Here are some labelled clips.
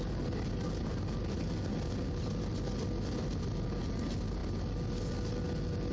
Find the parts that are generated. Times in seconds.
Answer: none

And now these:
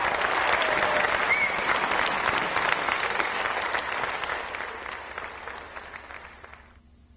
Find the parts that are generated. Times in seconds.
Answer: 2.7-3.4 (codec, SNAC)

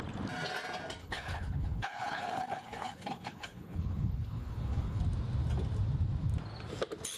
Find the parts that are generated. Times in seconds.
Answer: 1.0-5.0 (codec, HILCodec)

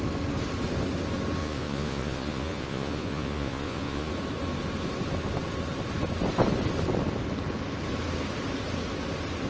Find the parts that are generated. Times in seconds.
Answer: 1.4-4.1 (vocoder, Vocos)